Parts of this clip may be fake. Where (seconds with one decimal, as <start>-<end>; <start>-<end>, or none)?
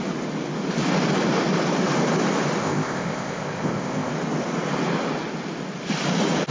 2.6-4.1